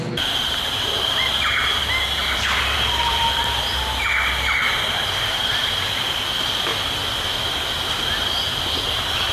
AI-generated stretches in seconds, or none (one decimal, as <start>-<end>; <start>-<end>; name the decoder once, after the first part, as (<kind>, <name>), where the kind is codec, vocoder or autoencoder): 2.2-6.1 (vocoder, BigVGAN v2)